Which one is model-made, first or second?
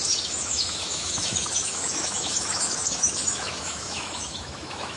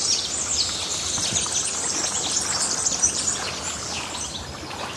first